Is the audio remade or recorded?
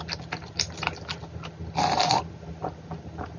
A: recorded